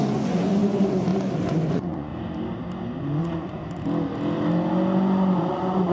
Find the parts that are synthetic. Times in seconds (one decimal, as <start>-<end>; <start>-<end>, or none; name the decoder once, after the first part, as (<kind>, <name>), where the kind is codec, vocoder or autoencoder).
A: 0.0-1.1 (vocoder, Vocos); 1.7-2.1; 3.2-3.6; 5.4-5.9